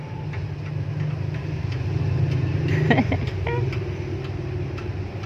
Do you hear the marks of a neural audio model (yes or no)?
yes